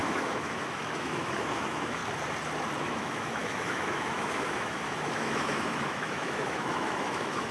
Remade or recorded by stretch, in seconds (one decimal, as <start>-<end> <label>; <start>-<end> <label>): 0.0-2.0 remade; 2.0-2.8 recorded; 2.8-7.5 remade